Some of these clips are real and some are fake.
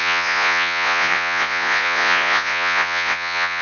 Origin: fake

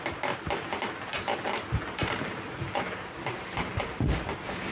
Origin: real